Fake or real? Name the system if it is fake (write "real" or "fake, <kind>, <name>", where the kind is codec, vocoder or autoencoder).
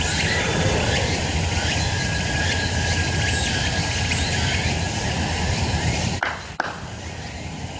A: real